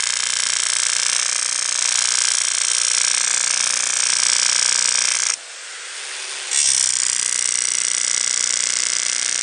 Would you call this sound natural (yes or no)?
yes